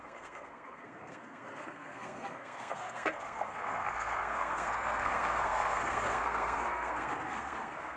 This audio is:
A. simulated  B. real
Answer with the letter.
A